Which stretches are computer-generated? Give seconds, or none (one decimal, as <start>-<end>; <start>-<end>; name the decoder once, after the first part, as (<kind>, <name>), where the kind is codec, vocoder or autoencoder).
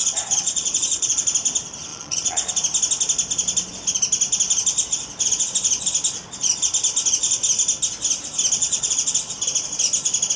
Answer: 0.0-1.2 (vocoder, Vocos); 1.9-2.5; 8.6-9.1